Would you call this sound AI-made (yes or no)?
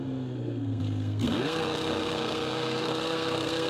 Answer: yes